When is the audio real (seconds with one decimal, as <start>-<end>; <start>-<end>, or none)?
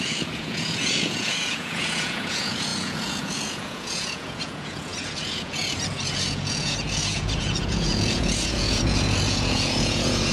none